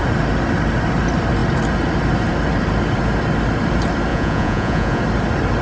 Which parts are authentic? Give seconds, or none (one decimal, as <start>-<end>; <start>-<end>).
0.0-4.1; 5.0-5.6